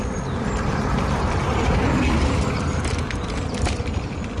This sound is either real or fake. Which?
real